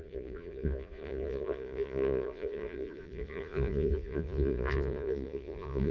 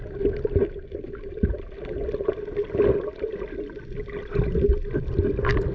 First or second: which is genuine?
second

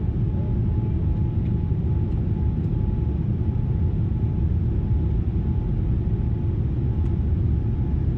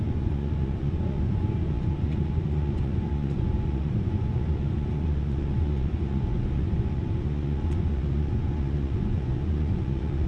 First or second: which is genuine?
first